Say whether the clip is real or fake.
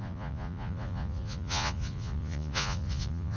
fake